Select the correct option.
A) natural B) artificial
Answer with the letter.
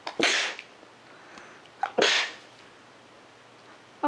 A